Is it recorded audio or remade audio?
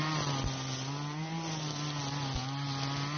recorded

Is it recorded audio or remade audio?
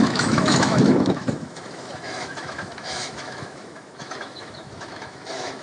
remade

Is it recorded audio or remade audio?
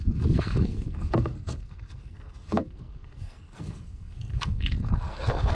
remade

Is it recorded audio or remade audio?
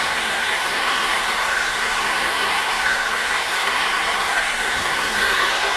remade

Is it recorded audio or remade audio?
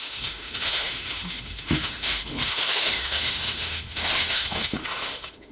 remade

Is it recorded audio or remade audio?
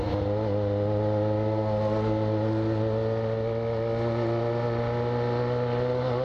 recorded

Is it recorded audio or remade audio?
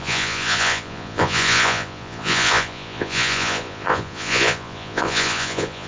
remade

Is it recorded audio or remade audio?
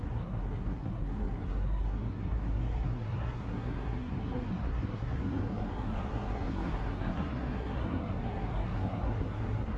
remade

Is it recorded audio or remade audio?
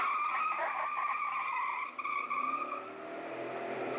recorded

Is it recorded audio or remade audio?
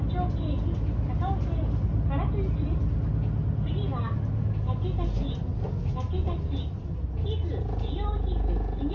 recorded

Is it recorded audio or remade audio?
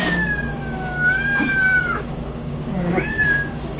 remade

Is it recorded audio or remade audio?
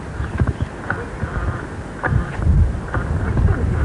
recorded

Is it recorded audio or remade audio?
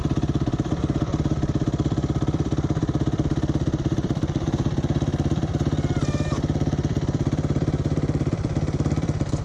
remade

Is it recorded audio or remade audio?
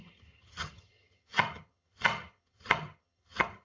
remade